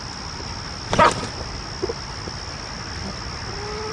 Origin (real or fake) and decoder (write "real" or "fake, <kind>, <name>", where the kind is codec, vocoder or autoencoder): real